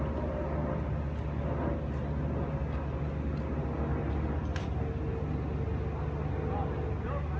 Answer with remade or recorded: recorded